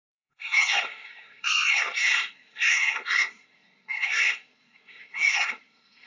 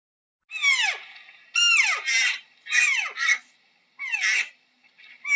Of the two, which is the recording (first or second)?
second